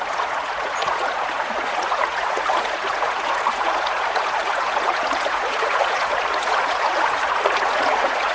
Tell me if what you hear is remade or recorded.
remade